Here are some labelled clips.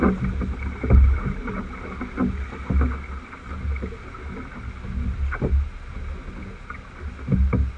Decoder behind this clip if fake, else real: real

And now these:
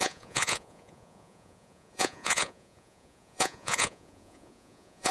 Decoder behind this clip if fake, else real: fake, vocoder, Vocos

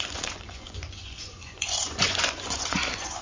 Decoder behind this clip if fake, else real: fake, vocoder, Vocos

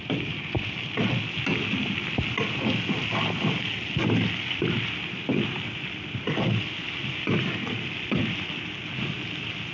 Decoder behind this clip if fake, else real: real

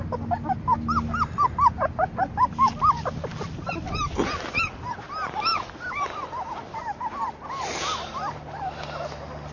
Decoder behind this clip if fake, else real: real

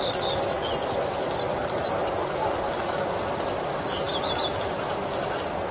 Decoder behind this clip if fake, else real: real